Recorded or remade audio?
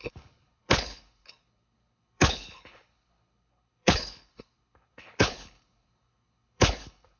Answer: remade